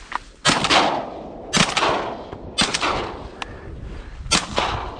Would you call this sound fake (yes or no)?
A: no